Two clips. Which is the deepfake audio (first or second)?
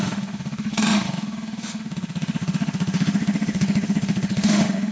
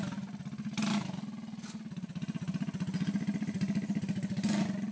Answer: first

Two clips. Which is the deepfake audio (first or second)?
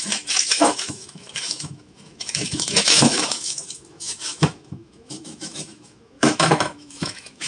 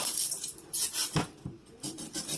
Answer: first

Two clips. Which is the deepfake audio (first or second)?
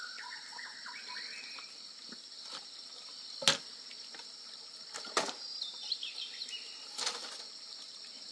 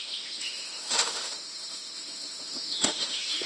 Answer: second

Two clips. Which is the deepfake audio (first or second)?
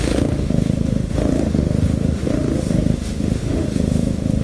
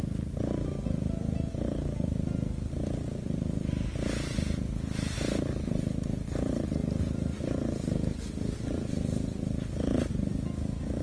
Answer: first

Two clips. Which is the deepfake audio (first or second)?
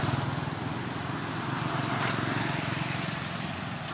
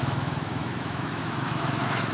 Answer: second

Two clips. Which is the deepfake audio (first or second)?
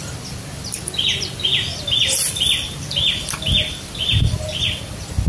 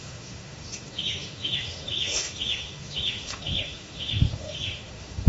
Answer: second